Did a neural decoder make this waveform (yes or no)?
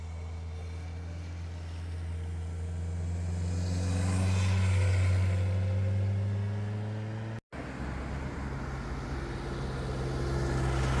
no